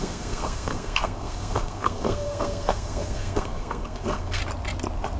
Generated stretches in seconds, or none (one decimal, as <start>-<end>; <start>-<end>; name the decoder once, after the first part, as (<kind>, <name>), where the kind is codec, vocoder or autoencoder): 0.0-4.4 (codec, SNAC)